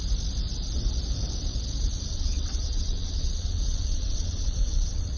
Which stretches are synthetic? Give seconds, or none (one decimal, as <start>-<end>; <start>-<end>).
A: 2.1-5.2